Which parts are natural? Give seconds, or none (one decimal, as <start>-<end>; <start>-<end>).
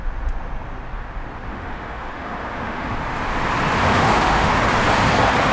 0.0-1.5; 3.0-3.9; 4.5-5.5